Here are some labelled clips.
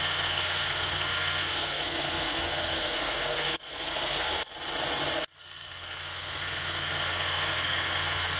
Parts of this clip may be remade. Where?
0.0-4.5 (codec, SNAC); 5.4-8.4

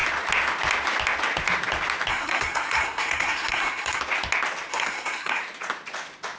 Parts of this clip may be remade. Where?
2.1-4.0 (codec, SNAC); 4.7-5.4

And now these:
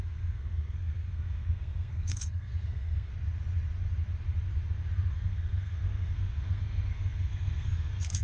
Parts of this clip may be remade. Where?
0.0-3.1 (codec, SNAC); 5.1-8.2